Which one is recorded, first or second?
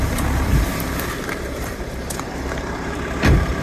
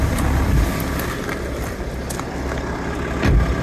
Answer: second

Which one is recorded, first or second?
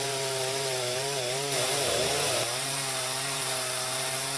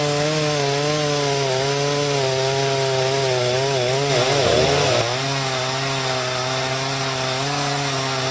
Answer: second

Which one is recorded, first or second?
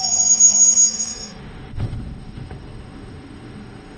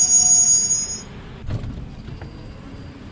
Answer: second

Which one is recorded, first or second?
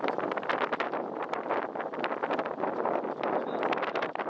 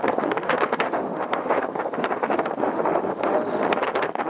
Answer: first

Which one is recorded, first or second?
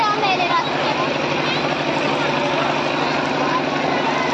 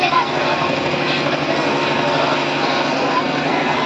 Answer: first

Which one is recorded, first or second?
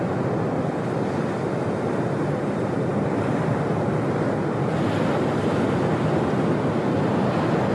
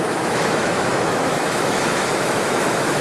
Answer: first